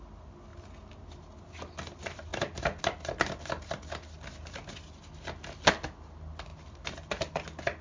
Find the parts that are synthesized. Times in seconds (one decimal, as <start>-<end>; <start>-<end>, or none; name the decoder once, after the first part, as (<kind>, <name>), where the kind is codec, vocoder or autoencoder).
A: none

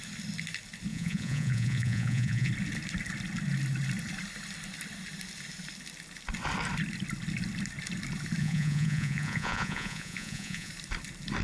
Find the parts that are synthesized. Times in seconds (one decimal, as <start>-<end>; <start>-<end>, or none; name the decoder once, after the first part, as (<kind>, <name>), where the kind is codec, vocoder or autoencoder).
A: 0.9-2.5 (vocoder, Vocos); 8.4-10.7

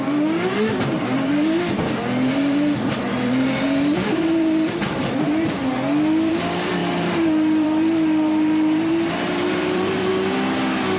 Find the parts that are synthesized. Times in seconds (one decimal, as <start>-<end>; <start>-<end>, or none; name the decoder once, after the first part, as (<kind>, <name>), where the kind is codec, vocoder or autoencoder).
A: 0.0-5.6 (vocoder, BigVGAN v2); 6.3-10.1

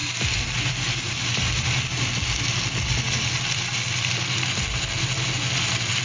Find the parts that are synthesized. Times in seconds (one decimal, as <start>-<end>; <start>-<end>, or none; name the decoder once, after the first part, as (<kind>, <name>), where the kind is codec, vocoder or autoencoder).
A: 0.0-0.7 (vocoder, BigVGAN v2)

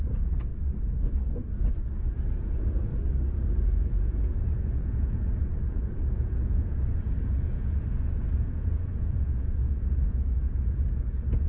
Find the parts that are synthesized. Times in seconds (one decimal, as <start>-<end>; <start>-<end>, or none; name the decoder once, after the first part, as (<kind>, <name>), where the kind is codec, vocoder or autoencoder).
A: 0.0-0.5 (vocoder, Vocos); 2.0-2.9; 3.9-11.5